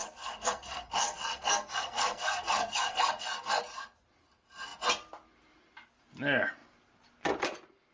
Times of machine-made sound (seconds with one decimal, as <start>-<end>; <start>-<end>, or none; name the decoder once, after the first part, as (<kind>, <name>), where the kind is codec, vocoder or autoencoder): 0.0-3.6 (codec, SNAC)

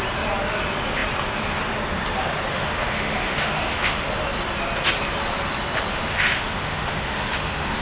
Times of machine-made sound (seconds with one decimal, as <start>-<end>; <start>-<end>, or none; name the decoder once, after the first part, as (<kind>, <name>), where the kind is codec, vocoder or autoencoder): 2.5-4.1 (autoencoder, DAC-VAE); 5.9-7.8

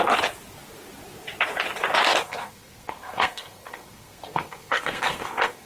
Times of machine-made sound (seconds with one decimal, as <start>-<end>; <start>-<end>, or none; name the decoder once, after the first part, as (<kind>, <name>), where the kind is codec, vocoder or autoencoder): 2.2-5.7 (codec, SNAC)

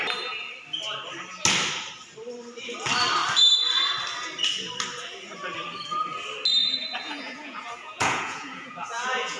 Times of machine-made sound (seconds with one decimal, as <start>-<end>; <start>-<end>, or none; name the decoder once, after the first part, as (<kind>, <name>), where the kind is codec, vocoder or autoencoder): 6.6-9.4 (vocoder, Vocos)

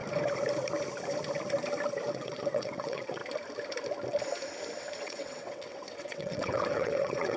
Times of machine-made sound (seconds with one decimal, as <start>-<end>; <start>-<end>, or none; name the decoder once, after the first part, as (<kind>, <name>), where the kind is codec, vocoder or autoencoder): 2.1-3.2 (vocoder, WaveNeXt); 5.0-7.4

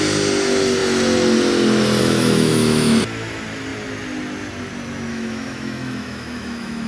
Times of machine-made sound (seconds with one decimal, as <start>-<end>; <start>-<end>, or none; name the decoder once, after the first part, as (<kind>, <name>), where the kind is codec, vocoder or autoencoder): 2.0-3.0 (autoencoder, DAC-VAE); 5.1-6.9